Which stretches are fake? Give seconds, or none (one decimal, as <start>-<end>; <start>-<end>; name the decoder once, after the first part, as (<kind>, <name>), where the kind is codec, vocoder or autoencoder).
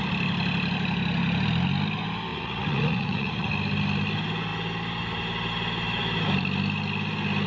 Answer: 2.3-3.5 (vocoder, Vocos)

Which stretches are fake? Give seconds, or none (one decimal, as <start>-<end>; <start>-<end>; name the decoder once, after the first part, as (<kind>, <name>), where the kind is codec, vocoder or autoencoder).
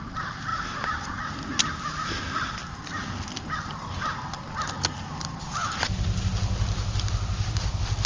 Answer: none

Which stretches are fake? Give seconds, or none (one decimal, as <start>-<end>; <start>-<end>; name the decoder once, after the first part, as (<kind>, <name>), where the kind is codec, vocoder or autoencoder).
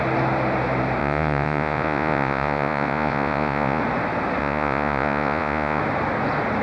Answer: 1.0-3.8 (vocoder, Vocos); 4.4-5.8